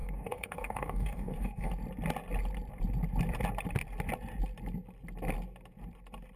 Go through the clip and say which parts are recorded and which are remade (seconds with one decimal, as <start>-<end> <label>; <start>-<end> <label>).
0.0-1.7 remade; 1.7-6.4 recorded